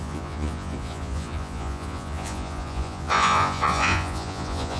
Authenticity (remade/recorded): remade